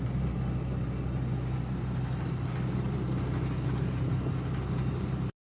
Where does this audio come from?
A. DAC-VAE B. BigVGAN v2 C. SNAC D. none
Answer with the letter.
D